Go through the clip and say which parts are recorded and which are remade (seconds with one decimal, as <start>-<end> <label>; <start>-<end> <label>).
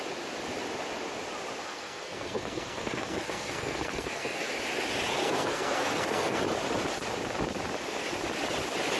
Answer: 0.0-1.6 recorded; 1.6-4.5 remade; 4.5-5.2 recorded; 5.2-6.4 remade; 6.4-9.0 recorded